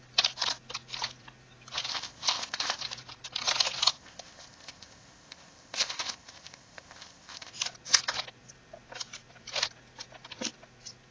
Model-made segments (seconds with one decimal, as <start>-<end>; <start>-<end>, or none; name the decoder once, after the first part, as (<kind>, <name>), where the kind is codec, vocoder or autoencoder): 1.9-2.8 (codec, ZipCodec); 3.9-7.5